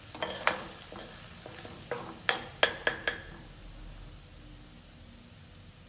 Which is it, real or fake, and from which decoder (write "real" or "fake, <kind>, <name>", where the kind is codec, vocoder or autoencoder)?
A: real